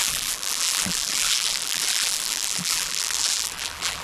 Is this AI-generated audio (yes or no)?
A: yes